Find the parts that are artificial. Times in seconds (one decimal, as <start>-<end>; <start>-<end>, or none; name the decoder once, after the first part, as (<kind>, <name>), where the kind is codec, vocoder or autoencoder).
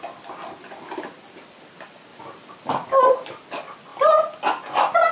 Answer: none